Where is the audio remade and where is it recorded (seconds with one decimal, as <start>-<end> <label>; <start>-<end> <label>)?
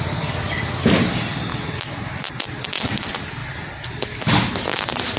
0.0-5.2 recorded